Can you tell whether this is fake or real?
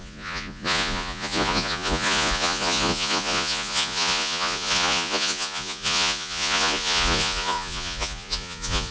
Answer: fake